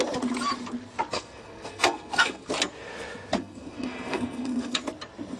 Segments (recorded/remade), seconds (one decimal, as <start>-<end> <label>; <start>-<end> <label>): 0.0-1.1 recorded; 1.1-2.5 remade; 2.5-3.4 recorded; 3.4-4.8 remade; 4.8-5.4 recorded